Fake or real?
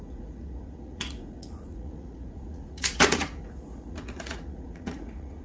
fake